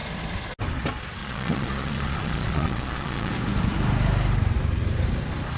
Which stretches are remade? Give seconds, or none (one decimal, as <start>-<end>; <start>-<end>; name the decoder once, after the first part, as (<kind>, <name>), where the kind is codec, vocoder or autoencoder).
1.2-3.3 (vocoder, Vocos)